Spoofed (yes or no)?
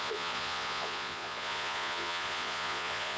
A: yes